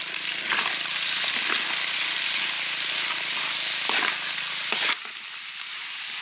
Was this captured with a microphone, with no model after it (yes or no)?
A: yes